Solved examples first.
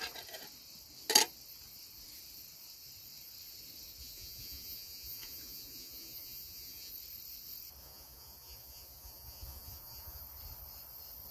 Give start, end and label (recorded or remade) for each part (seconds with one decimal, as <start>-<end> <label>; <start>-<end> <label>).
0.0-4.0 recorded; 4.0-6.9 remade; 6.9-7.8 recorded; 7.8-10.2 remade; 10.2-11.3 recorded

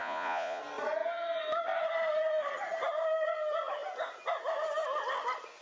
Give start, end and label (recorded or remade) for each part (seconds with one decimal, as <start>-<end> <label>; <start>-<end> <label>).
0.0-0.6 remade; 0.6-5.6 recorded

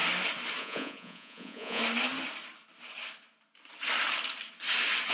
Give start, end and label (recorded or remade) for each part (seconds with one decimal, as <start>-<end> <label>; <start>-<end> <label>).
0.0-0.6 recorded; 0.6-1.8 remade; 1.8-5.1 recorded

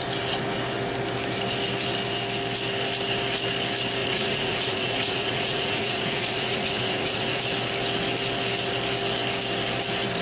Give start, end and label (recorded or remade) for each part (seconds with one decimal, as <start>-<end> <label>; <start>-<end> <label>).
0.0-4.0 recorded; 4.0-7.4 remade; 7.4-10.2 recorded

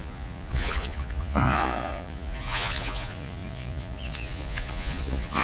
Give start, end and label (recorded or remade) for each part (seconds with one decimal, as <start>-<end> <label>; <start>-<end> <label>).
0.0-5.4 remade

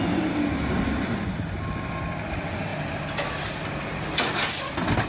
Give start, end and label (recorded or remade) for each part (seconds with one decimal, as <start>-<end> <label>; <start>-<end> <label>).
0.0-5.1 recorded

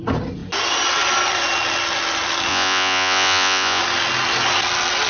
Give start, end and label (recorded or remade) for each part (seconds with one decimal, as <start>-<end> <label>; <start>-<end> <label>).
0.0-2.5 recorded; 2.5-3.8 remade; 3.8-5.1 recorded